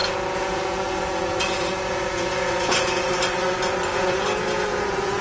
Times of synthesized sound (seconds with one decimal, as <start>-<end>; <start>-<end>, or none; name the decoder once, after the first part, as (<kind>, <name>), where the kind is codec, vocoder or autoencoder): 0.0-3.1 (vocoder, Vocos); 3.9-5.2

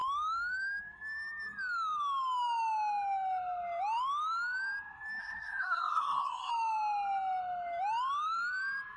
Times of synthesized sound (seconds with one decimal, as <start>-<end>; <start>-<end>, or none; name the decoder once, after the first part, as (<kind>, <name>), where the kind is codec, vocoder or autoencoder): 5.2-6.5 (codec, SNAC)

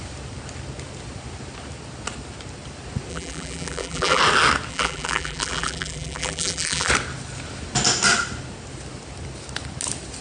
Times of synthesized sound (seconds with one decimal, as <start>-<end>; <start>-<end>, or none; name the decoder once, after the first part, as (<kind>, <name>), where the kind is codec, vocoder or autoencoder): 3.1-4.2 (vocoder, BigVGAN v2); 4.7-6.9